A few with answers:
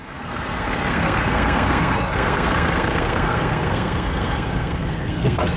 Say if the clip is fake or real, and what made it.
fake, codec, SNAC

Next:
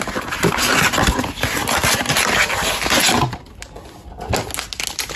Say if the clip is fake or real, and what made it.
real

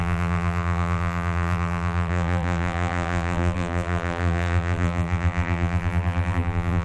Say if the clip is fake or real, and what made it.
fake, vocoder, BigVGAN v2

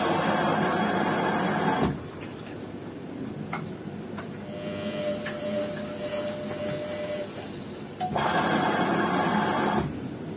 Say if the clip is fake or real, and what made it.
real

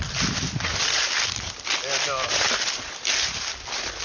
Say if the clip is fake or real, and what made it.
real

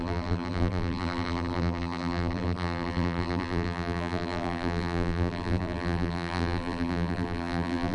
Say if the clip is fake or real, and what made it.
fake, vocoder, BigVGAN v2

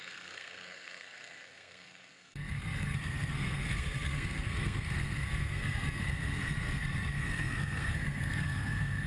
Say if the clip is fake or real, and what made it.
fake, codec, SNAC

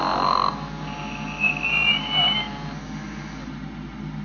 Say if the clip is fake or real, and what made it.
real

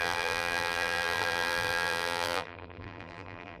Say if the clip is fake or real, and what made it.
fake, vocoder, BigVGAN v2